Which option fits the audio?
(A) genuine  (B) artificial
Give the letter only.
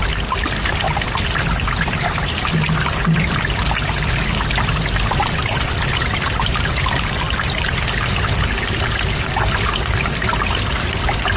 A